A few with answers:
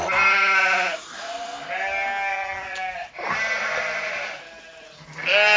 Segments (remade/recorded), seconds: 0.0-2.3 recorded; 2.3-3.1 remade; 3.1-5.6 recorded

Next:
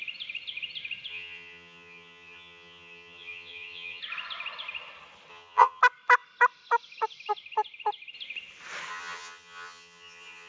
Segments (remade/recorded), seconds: 0.0-1.1 recorded; 1.1-4.0 remade; 4.0-5.3 recorded; 5.3-5.8 remade; 5.8-8.9 recorded; 8.9-10.5 remade

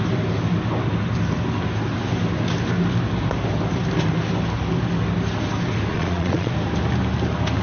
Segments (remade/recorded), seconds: 0.0-5.9 recorded; 5.9-6.5 remade; 6.5-7.6 recorded

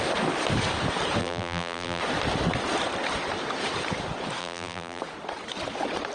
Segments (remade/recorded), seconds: 0.0-1.2 recorded; 1.2-2.0 remade; 2.0-4.4 recorded; 4.4-5.0 remade; 5.0-6.1 recorded

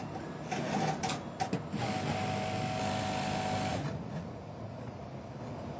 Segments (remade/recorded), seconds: 0.0-3.7 recorded; 3.7-5.0 remade; 5.0-5.8 recorded